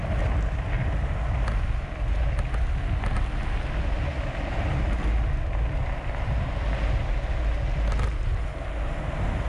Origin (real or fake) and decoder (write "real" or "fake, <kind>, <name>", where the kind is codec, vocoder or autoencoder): real